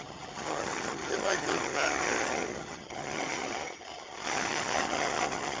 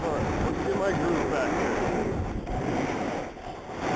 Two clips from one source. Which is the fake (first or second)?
first